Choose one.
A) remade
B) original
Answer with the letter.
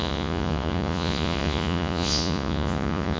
A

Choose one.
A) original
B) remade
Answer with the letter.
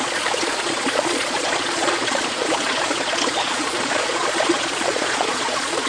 B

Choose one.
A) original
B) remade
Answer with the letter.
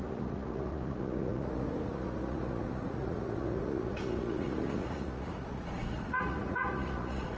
B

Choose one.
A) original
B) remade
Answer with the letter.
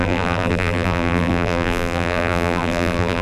B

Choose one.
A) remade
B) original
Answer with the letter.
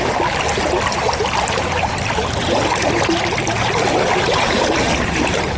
B